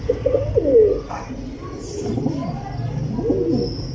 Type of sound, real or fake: real